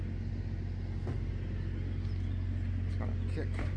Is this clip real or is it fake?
real